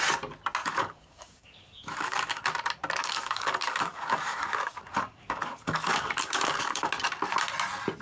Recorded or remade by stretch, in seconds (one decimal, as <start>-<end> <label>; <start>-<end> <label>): 0.0-0.6 recorded; 0.6-2.4 remade; 2.4-3.0 recorded; 3.0-6.9 remade; 6.9-8.0 recorded